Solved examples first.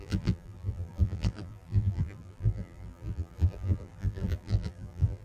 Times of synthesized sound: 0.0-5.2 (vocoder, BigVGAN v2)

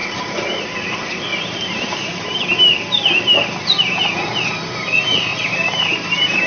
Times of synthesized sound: 1.3-2.5 (vocoder, BigVGAN v2); 5.3-6.5

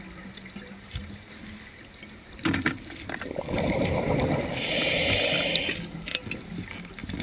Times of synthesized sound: 1.4-5.6 (vocoder, BigVGAN v2)

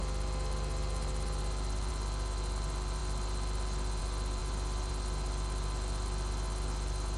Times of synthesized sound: 4.4-4.9 (vocoder, BigVGAN v2)

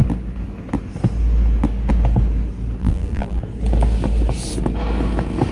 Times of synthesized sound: 2.8-3.4 (vocoder, BigVGAN v2)

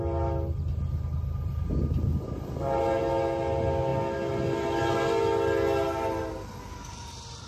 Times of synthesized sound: none